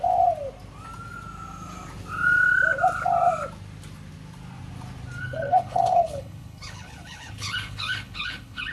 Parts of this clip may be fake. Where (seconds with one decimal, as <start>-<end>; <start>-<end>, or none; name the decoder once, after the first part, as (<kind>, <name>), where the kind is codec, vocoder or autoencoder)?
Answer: 5.2-8.7 (codec, HILCodec)